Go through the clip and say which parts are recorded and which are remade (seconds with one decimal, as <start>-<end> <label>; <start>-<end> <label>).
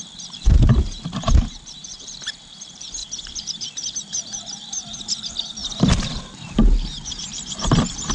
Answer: 0.0-1.8 recorded; 1.8-2.4 remade; 2.4-3.0 recorded; 3.0-3.6 remade; 3.6-5.6 recorded; 5.6-6.2 remade; 6.2-8.1 recorded